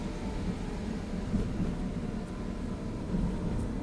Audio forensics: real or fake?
real